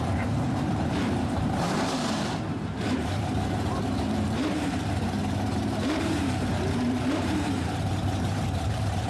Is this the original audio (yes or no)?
no